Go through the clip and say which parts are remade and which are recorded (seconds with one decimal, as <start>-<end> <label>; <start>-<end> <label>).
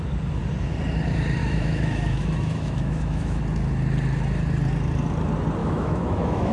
0.0-1.4 recorded; 1.4-3.4 remade; 3.4-5.6 recorded; 5.6-6.5 remade